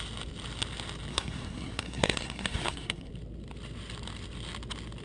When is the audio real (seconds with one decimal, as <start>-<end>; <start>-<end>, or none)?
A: 0.0-1.1; 3.1-5.0